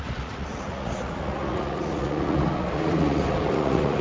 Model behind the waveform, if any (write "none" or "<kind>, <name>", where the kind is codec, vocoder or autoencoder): vocoder, Vocos